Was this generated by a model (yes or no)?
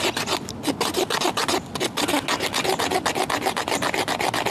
no